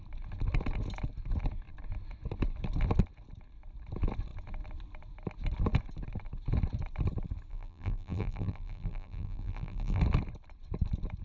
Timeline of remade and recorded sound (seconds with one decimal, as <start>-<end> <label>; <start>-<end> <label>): 0.0-7.5 recorded; 7.5-10.0 remade; 10.0-11.2 recorded